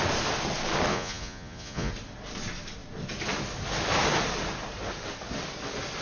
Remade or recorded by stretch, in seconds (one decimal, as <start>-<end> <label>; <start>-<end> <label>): 0.0-0.9 recorded; 0.9-1.9 remade; 1.9-6.0 recorded